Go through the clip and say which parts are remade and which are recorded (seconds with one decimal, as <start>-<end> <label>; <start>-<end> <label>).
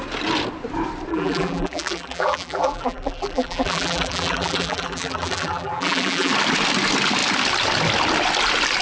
0.0-1.1 recorded; 1.1-6.3 remade; 6.3-8.8 recorded